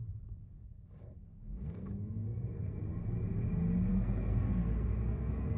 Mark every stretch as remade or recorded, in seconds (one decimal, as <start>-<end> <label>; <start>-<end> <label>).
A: 0.0-0.4 recorded; 0.4-2.8 remade; 2.8-3.9 recorded; 3.9-5.6 remade